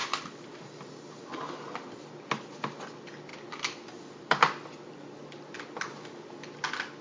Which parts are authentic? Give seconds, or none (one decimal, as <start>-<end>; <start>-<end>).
0.0-7.0